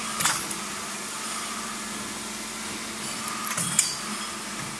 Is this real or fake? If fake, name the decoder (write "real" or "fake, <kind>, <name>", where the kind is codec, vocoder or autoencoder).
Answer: real